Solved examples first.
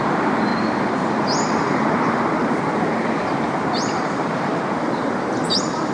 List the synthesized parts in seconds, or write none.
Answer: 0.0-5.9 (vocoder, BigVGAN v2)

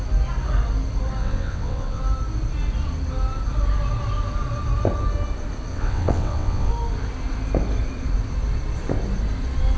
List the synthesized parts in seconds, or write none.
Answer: 1.2-2.0 (vocoder, WaveNeXt); 5.7-6.7

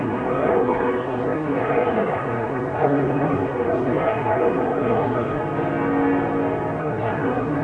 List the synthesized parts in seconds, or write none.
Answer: 0.0-5.4 (codec, SNAC); 6.8-7.6

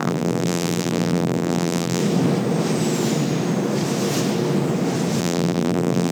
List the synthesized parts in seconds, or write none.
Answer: 0.0-2.0 (vocoder, BigVGAN v2); 5.2-6.1

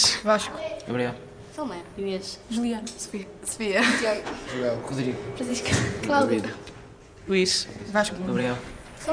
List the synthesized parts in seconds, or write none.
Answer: 0.0-1.2 (vocoder, Vocos); 2.8-9.1

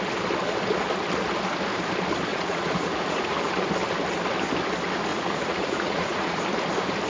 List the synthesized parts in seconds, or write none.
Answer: 2.3-3.5 (vocoder, Vocos); 5.1-6.4

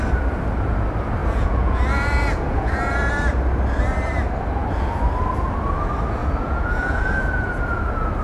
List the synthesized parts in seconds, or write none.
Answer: 1.2-3.1 (vocoder, Vocos); 6.2-7.6